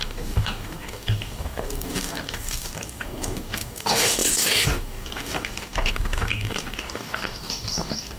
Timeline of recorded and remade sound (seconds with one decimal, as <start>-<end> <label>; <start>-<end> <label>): 0.0-8.2 remade